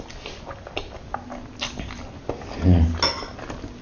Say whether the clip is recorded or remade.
recorded